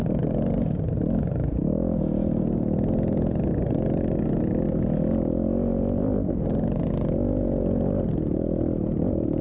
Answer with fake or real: real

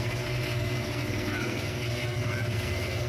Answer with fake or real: fake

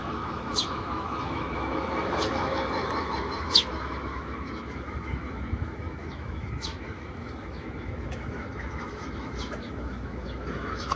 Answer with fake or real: fake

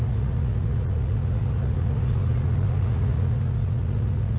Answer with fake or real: fake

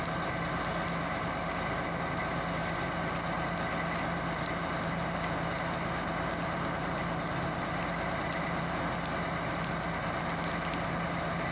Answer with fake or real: real